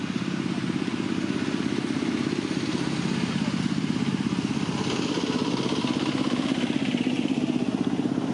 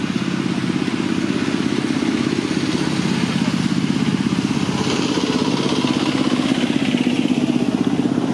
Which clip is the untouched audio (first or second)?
second